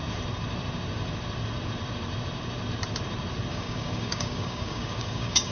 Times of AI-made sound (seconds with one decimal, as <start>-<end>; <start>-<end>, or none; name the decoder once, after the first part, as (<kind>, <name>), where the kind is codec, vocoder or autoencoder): 3.5-5.5 (codec, DAC)